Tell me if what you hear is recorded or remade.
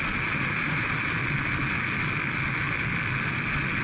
recorded